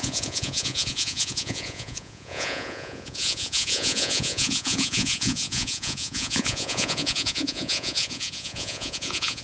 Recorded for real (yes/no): no